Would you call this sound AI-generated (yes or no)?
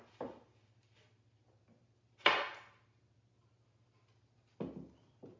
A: no